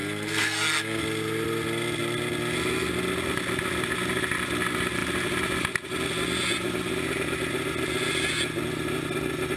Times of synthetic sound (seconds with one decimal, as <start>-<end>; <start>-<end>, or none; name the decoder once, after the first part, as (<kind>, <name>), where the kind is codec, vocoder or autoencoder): 0.0-1.0 (codec, SNAC)

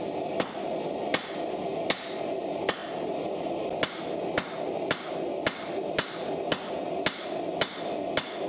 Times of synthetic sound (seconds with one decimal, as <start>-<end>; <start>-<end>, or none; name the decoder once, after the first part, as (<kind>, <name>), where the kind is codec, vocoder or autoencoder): none

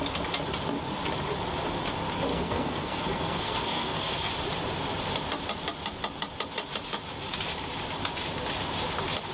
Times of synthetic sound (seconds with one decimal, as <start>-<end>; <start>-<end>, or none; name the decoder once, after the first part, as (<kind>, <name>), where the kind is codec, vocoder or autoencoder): 2.3-4.3 (codec, SNAC)

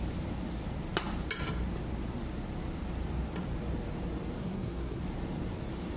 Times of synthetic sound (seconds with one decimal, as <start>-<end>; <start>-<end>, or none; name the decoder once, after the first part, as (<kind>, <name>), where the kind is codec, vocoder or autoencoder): 4.4-5.0 (codec, SNAC)